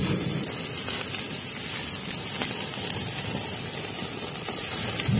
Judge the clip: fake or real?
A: real